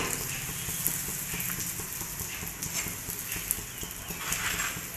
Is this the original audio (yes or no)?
yes